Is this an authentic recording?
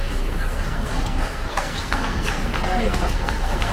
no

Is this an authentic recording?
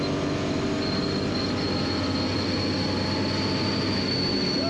yes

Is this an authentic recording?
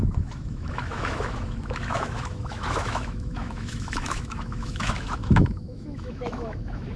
no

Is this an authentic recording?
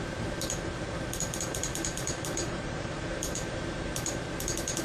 no